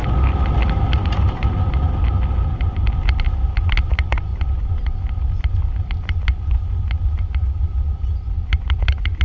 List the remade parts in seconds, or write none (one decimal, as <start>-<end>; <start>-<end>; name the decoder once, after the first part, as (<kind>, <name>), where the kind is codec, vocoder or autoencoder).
none